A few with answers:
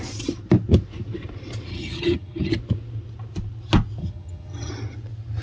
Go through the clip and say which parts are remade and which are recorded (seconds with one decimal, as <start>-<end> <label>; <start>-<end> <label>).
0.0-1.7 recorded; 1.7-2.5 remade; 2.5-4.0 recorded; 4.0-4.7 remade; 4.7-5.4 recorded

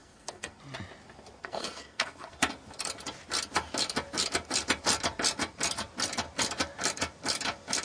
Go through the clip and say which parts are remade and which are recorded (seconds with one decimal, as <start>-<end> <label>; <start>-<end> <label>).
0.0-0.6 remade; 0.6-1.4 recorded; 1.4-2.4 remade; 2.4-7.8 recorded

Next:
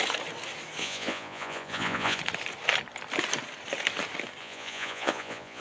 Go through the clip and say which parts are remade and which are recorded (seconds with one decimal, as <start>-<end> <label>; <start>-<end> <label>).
0.0-0.8 recorded; 0.8-2.2 remade; 2.2-4.4 recorded; 4.4-5.6 remade

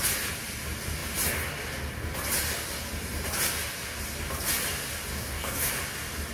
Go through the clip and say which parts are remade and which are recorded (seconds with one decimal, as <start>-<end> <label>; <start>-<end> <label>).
0.0-5.1 recorded; 5.1-5.7 remade; 5.7-6.3 recorded

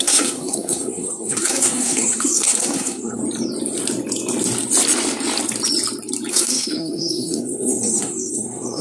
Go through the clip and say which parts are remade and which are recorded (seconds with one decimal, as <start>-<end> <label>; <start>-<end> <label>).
0.0-3.2 remade; 3.2-6.3 recorded; 6.3-8.8 remade

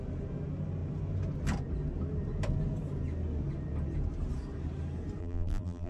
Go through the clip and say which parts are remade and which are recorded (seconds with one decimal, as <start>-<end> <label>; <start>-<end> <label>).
0.0-5.2 recorded; 5.2-5.9 remade

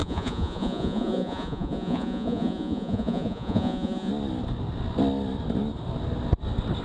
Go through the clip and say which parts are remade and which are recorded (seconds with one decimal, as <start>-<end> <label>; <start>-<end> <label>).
0.0-4.1 remade; 4.1-6.8 recorded

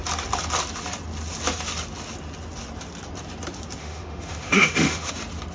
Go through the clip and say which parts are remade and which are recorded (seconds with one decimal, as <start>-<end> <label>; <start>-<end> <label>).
0.0-3.8 recorded; 3.8-5.1 remade; 5.1-5.5 recorded